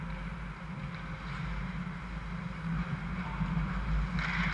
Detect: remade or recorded recorded